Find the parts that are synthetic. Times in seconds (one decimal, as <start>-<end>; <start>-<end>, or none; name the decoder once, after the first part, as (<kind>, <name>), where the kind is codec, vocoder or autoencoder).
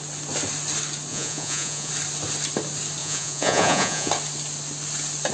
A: 1.1-1.9 (vocoder, Vocos); 3.0-4.1